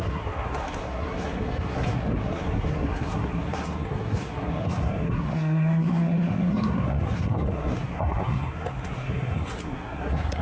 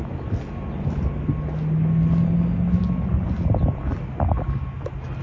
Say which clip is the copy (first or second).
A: first